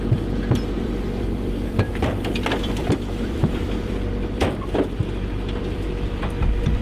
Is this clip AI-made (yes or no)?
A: yes